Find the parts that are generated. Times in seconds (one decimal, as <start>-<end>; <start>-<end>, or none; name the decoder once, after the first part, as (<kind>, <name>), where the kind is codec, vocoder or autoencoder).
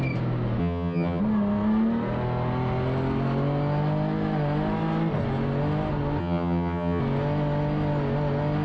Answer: 0.6-1.2 (vocoder, HiFi-GAN); 6.2-7.0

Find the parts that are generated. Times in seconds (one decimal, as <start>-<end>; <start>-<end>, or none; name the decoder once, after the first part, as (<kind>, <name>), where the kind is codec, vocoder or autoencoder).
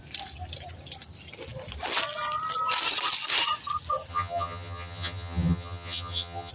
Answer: 4.1-6.5 (vocoder, HiFi-GAN)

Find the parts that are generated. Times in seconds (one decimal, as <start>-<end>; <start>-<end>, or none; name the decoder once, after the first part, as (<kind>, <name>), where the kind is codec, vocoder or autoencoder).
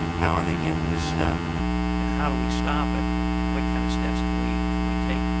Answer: 0.0-1.6 (vocoder, HiFi-GAN)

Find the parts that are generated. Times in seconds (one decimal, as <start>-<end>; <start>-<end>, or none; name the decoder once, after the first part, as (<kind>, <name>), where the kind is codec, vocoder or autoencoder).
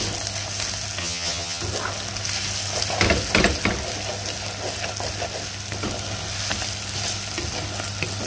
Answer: 1.0-1.6 (vocoder, HiFi-GAN)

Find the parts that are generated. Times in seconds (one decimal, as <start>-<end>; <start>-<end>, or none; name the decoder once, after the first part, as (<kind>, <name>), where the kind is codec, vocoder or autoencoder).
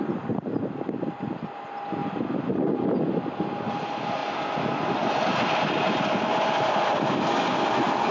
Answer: none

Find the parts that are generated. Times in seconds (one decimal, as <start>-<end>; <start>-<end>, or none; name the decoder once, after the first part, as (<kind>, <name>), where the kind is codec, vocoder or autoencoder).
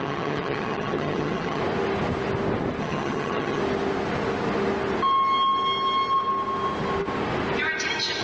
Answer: 0.0-1.6 (vocoder, HiFi-GAN); 2.8-3.6